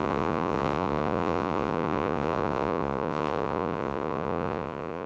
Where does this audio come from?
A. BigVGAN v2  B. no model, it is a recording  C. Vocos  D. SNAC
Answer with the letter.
C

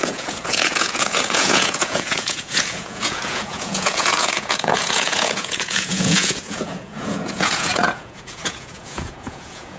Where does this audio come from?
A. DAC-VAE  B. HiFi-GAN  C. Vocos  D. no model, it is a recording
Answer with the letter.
C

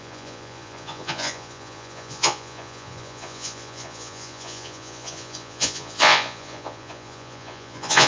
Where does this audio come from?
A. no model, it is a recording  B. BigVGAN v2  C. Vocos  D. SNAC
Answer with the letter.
C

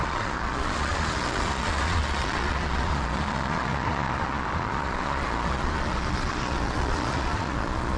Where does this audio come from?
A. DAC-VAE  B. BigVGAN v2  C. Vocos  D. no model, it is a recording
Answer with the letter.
C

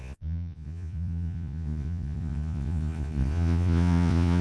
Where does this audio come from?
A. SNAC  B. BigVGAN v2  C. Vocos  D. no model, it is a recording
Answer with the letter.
C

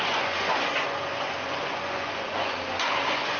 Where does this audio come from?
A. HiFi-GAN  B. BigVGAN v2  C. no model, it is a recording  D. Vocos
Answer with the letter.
D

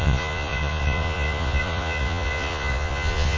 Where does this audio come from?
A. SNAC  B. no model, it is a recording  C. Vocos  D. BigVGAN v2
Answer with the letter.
C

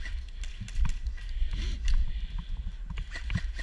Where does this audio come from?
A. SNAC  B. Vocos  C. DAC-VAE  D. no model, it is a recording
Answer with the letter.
D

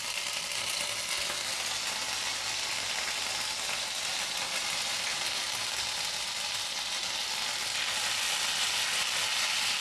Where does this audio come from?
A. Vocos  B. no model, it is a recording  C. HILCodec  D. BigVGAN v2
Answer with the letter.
B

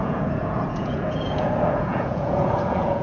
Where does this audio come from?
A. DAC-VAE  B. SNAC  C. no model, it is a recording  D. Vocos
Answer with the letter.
D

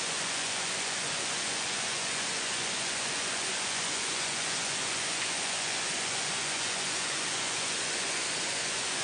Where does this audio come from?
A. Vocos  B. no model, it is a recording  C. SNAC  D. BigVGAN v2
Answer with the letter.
A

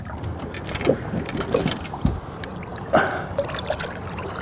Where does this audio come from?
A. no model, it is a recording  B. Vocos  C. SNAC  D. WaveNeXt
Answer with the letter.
A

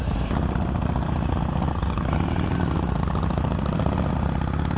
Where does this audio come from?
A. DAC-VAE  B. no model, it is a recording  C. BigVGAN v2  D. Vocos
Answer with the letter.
B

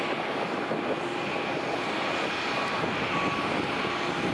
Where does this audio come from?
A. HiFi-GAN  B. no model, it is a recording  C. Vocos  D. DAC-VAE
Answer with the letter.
B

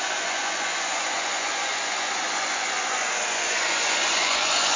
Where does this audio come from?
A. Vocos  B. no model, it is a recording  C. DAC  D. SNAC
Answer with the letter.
A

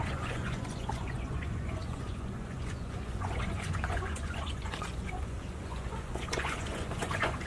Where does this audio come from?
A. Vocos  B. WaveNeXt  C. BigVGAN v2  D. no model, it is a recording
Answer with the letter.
A